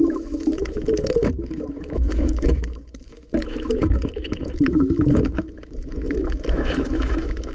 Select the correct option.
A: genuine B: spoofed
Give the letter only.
B